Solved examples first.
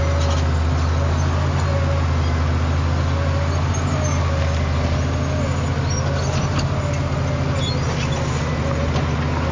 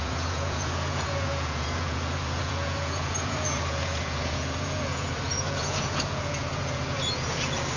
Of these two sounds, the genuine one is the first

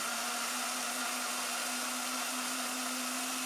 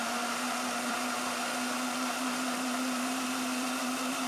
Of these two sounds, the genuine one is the first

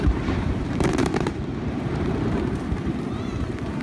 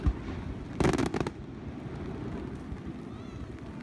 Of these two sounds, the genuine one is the second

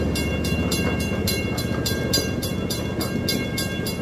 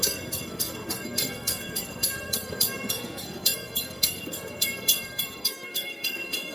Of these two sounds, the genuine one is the first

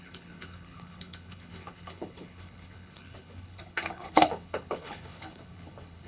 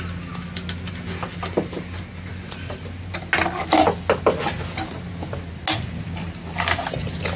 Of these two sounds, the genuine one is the second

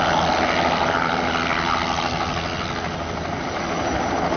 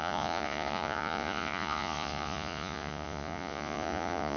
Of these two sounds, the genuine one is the first